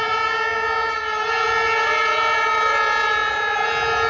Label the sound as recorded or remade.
recorded